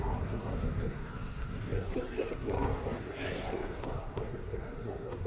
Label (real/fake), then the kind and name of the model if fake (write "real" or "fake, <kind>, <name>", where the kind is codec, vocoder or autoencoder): fake, codec, SNAC